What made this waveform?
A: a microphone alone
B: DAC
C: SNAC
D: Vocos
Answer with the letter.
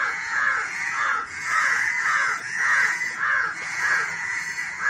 D